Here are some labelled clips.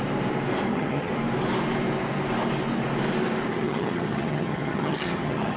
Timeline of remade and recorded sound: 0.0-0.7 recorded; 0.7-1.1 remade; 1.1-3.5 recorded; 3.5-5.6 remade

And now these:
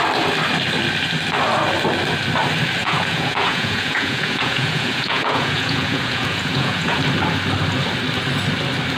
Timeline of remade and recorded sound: 0.0-2.8 recorded; 2.8-7.0 remade; 7.0-9.0 recorded

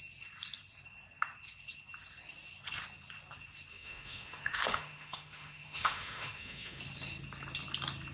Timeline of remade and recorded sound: 0.0-3.7 recorded; 3.7-6.8 remade; 6.8-8.1 recorded

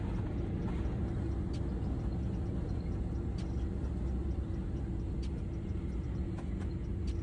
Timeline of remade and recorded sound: 0.0-4.0 recorded; 4.0-4.7 remade; 4.7-7.2 recorded

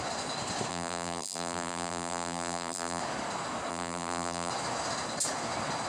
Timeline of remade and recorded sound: 0.0-0.7 recorded; 0.7-3.0 remade; 3.0-3.7 recorded; 3.7-4.5 remade; 4.5-5.9 recorded